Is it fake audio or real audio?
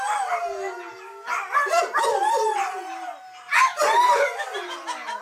real